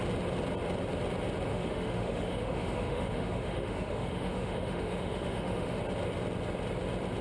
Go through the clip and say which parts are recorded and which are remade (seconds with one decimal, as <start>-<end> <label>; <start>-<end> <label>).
0.0-1.5 recorded; 1.5-5.8 remade; 5.8-7.2 recorded